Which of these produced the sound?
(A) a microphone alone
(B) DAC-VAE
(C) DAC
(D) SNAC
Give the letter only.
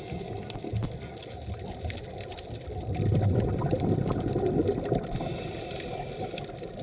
A